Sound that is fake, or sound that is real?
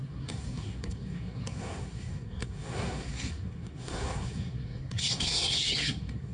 fake